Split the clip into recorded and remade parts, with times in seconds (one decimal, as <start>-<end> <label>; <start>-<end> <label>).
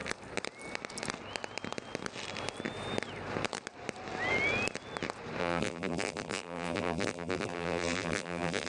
0.0-5.4 recorded; 5.4-8.7 remade